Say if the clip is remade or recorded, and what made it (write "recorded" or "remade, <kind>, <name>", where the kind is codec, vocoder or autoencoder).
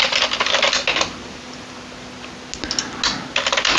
recorded